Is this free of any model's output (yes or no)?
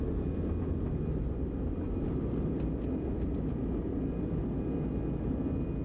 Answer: yes